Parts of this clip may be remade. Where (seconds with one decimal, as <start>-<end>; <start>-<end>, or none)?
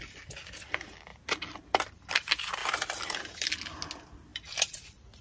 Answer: 4.3-5.2